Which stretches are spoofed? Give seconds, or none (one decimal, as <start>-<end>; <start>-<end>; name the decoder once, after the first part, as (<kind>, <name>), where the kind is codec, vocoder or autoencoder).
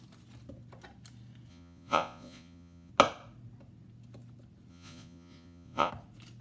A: 1.5-2.9 (vocoder, Vocos); 4.7-5.9